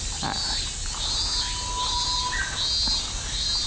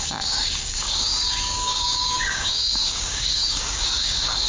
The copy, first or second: second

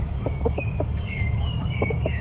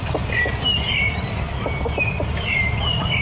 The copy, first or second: first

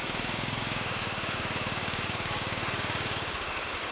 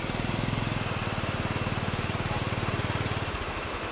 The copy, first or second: first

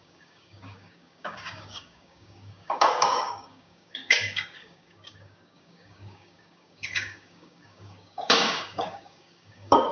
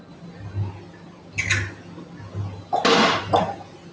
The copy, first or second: first